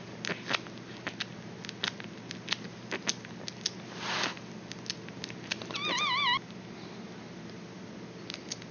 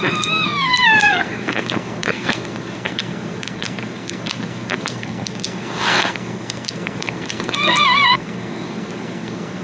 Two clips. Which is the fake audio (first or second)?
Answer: second